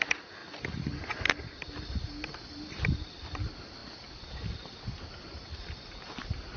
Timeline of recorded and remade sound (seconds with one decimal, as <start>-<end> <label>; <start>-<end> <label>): 0.0-6.6 recorded